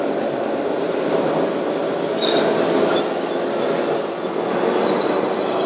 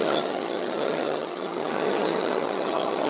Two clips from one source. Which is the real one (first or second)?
first